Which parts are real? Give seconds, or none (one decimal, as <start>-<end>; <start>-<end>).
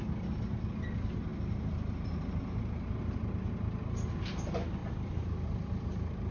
0.0-1.3; 2.1-4.8